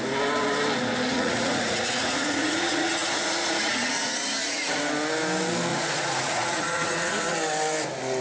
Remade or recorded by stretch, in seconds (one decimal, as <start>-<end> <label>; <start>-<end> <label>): 0.0-1.1 recorded; 1.1-4.8 remade; 4.8-5.7 recorded; 5.7-7.2 remade; 7.2-8.2 recorded